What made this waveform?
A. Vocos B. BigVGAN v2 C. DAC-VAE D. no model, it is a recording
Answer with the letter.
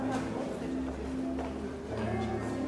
D